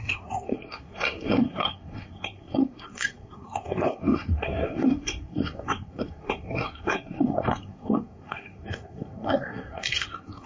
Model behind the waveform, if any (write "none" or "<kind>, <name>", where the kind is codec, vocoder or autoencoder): codec, SNAC